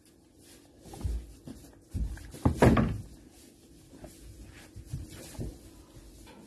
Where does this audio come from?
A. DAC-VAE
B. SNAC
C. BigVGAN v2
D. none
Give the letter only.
D